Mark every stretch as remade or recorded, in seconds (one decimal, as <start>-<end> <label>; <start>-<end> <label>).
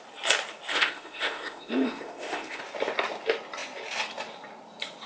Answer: 0.0-0.7 recorded; 0.7-2.6 remade; 2.6-5.1 recorded